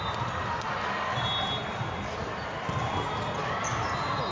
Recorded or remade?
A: recorded